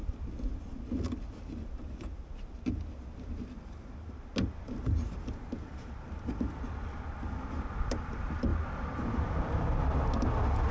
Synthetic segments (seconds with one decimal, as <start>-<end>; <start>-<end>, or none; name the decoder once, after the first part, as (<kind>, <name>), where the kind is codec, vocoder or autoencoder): none